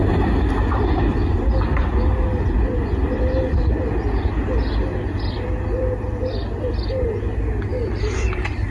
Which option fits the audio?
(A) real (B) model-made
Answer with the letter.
A